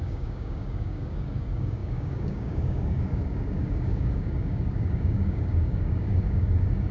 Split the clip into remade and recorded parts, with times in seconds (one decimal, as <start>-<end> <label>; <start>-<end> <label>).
0.0-6.9 remade